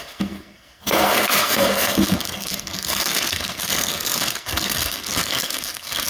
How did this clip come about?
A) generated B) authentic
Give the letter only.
A